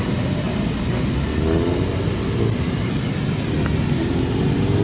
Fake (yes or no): no